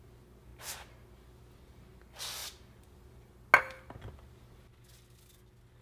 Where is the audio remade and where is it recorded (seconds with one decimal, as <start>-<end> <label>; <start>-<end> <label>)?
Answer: 0.0-5.8 recorded